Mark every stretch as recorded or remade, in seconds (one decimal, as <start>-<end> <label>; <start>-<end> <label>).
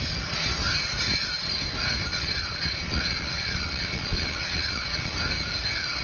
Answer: 0.0-2.1 recorded; 2.1-5.1 remade; 5.1-6.0 recorded